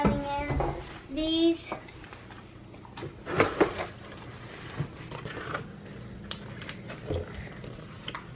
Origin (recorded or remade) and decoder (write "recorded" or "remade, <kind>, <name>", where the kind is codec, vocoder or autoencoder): recorded